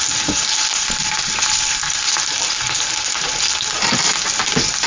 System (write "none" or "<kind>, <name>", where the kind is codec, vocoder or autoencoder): none